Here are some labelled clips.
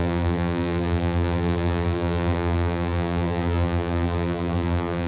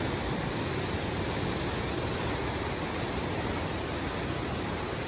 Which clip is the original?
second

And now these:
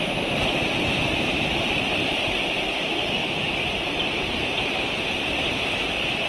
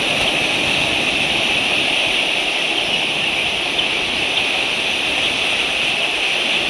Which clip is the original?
second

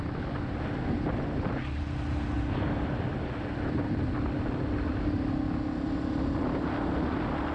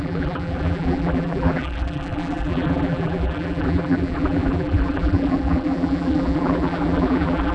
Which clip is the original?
first